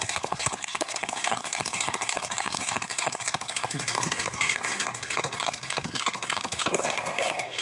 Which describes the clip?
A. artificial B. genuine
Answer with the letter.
A